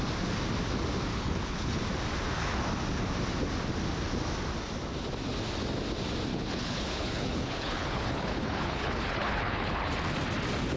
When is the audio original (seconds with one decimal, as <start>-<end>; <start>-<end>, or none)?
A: 0.0-1.1; 1.8-6.3; 9.9-10.8